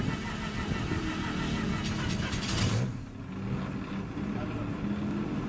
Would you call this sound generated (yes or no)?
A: no